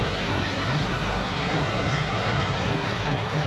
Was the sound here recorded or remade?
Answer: remade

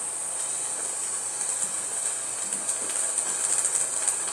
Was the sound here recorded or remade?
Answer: recorded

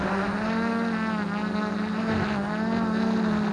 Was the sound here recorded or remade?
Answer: recorded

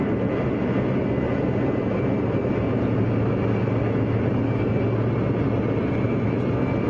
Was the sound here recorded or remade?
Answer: recorded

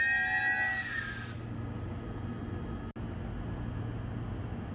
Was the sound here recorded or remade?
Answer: recorded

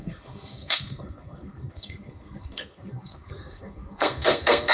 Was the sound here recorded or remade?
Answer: remade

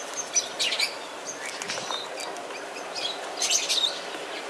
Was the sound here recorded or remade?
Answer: recorded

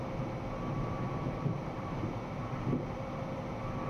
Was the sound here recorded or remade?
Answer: recorded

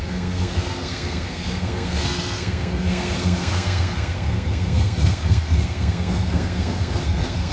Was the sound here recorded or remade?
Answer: remade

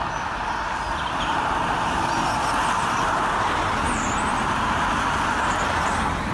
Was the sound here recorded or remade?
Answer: recorded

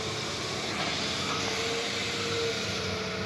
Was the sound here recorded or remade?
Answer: recorded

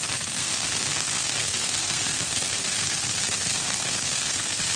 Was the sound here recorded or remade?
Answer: remade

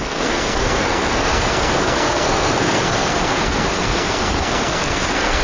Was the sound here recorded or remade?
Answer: remade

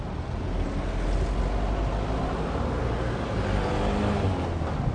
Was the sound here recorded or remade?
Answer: recorded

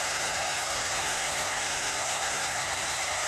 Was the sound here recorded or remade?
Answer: remade